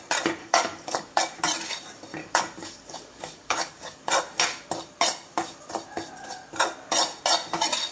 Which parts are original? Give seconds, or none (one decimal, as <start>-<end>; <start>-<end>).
0.0-0.4; 1.2-2.2; 4.1-7.9